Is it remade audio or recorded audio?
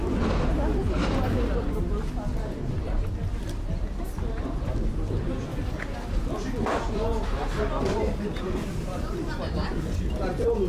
recorded